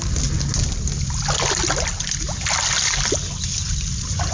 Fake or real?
real